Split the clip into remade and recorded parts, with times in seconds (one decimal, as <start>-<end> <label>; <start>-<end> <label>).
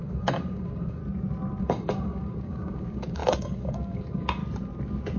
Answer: 0.0-1.0 remade; 1.0-1.6 recorded; 1.6-4.4 remade; 4.4-5.2 recorded